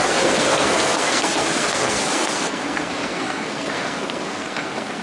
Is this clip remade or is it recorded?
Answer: remade